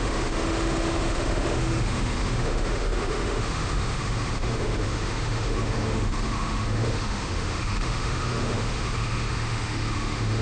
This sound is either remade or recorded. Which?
remade